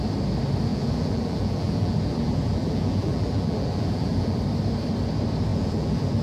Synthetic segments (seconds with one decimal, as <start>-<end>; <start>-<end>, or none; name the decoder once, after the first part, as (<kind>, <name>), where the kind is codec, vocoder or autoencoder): 0.7-4.4 (vocoder, BigVGAN v2); 5.5-6.2

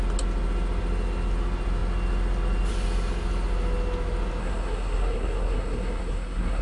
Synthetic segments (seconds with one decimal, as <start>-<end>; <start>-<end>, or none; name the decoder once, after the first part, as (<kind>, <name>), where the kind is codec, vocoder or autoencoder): 4.4-6.6 (codec, SNAC)

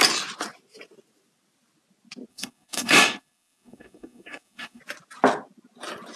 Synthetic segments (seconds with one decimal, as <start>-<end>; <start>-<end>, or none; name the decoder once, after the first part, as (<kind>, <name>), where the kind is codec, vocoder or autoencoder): 2.3-4.8 (codec, DAC)